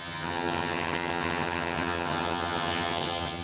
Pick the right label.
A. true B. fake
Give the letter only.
B